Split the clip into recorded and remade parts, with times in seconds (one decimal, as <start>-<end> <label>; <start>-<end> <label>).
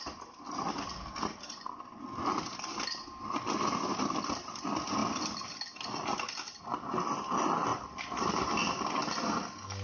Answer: 0.0-7.7 recorded; 7.7-8.5 remade; 8.5-9.8 recorded